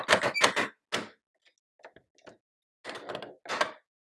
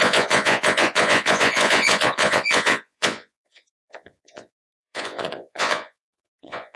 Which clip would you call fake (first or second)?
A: second